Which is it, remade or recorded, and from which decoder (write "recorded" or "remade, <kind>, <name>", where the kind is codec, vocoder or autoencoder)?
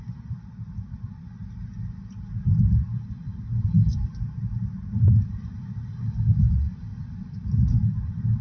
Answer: recorded